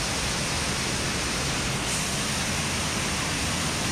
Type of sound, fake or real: real